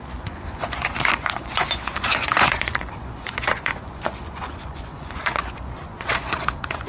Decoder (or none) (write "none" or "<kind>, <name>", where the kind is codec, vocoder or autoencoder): vocoder, Vocos